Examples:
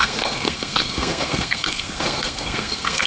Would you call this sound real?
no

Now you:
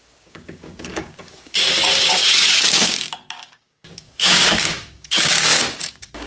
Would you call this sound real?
no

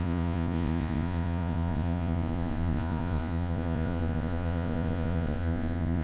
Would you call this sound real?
no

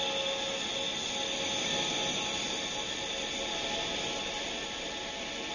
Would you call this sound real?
yes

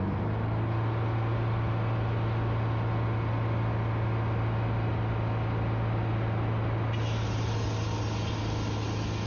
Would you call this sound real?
yes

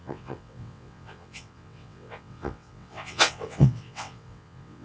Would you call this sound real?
no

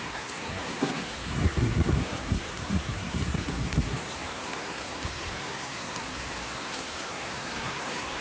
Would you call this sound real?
no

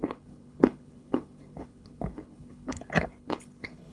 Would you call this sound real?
no